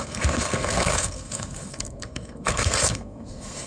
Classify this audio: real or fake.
fake